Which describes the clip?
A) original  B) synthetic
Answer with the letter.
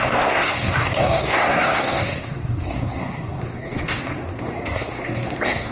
B